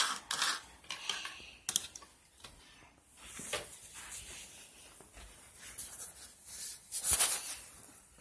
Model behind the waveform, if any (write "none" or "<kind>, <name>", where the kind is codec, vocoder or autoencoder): none